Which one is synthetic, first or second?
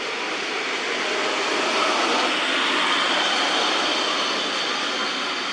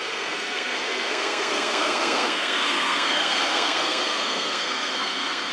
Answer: second